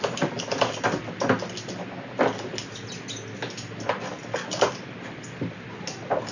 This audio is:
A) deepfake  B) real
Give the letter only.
B